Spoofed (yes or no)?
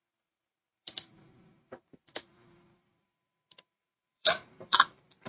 yes